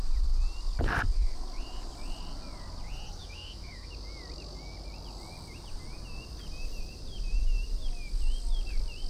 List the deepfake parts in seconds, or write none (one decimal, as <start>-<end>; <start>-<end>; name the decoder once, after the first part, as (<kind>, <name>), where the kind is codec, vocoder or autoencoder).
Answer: 3.2-3.9 (autoencoder, DAC-VAE)